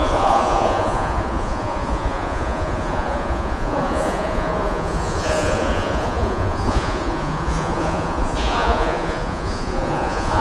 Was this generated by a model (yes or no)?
yes